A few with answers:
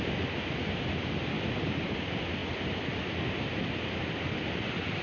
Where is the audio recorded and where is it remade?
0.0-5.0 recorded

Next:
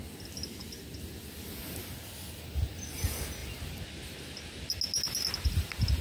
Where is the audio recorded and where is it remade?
0.0-6.0 recorded

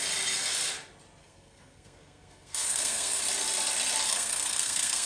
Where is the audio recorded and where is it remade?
0.0-1.2 recorded; 1.2-3.2 remade; 3.2-4.1 recorded; 4.1-5.1 remade